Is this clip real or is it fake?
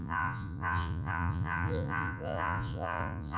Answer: fake